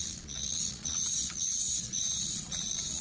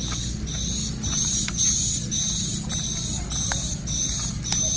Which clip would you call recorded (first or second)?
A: second